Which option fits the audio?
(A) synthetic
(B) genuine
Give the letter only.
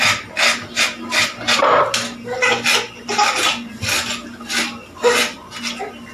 B